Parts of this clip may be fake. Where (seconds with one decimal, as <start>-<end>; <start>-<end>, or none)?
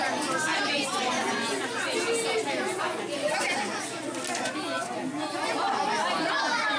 none